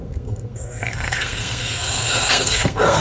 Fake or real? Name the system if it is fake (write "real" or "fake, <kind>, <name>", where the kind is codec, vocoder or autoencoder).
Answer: fake, codec, SNAC